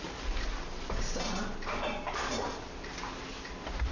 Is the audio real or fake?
real